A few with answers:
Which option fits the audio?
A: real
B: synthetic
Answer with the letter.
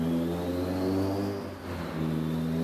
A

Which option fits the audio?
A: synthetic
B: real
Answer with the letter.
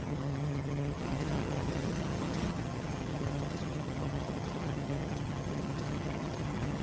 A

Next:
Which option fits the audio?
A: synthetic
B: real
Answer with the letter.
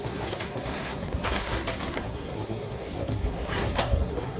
A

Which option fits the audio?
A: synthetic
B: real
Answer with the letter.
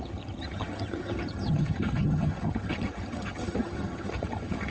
A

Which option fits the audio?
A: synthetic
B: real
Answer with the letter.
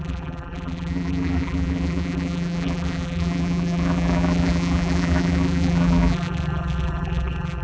A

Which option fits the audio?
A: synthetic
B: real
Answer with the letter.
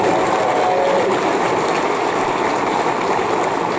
B